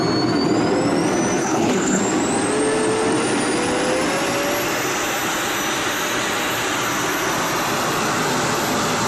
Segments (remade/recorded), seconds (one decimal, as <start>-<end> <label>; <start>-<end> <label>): 0.0-1.4 recorded; 1.4-2.0 remade; 2.0-9.1 recorded